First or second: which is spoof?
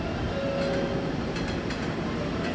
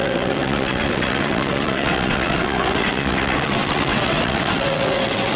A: second